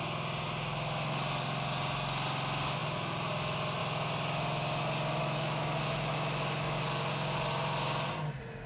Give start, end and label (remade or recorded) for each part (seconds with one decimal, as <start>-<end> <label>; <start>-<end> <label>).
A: 0.0-5.2 recorded; 5.2-6.8 remade; 6.8-8.7 recorded